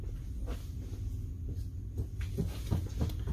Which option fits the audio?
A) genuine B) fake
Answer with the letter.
A